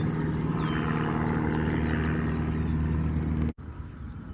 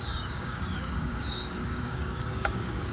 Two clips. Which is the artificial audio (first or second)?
second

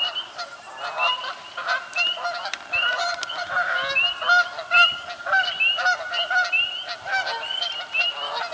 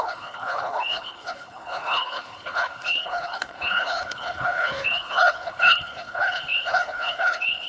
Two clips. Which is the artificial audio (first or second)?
second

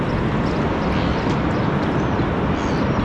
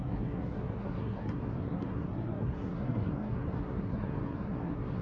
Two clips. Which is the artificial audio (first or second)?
second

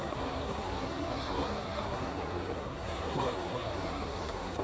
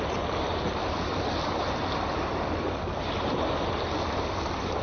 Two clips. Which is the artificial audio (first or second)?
first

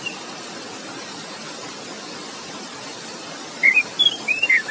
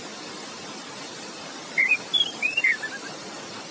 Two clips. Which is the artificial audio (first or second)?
second